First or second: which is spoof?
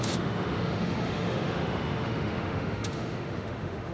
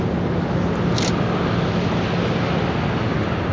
first